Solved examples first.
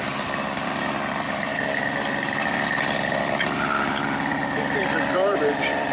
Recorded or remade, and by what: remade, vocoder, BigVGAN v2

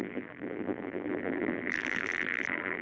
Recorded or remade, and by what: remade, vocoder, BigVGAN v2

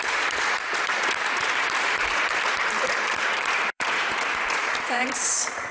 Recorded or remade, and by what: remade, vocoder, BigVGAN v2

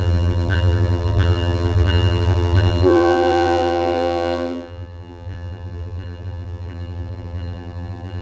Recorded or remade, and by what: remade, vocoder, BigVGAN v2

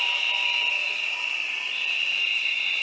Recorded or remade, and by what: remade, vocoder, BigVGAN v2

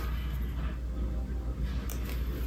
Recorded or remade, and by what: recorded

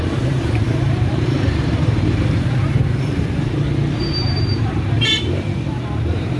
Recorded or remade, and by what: remade, vocoder, BigVGAN v2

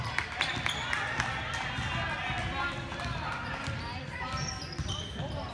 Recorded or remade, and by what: recorded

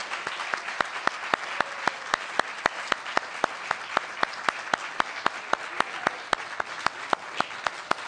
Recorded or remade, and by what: recorded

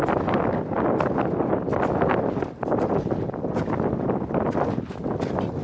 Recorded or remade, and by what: recorded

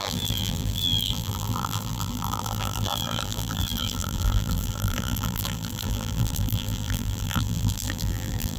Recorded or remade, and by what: remade, vocoder, BigVGAN v2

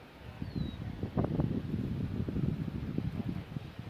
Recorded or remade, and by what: recorded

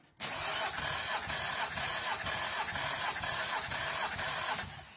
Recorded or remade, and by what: recorded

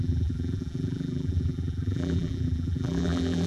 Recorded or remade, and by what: remade, vocoder, BigVGAN v2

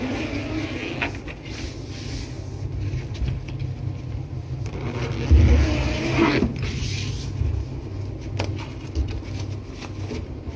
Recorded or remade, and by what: recorded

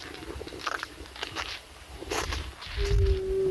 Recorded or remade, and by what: recorded